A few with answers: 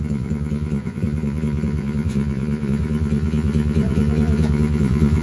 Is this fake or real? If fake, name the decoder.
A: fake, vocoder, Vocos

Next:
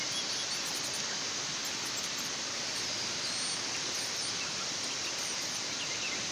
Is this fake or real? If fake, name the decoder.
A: real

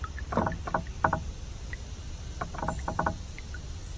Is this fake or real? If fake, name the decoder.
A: real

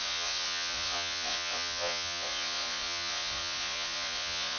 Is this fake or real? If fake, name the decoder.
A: fake, vocoder, Vocos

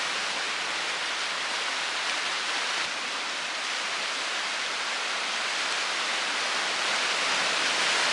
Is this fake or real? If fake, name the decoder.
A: real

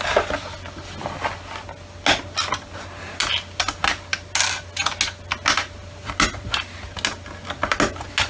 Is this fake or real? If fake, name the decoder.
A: real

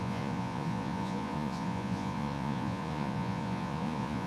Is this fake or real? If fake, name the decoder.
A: fake, vocoder, Vocos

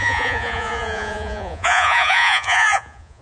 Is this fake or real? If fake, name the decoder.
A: fake, vocoder, Vocos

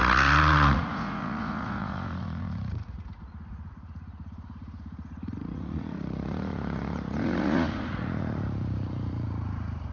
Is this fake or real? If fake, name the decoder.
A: fake, vocoder, Vocos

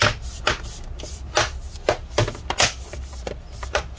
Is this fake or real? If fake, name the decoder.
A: real